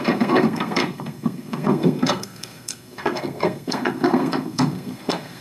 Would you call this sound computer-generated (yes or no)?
yes